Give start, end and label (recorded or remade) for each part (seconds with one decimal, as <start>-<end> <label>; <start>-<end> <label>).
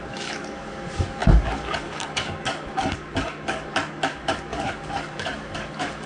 0.0-6.1 remade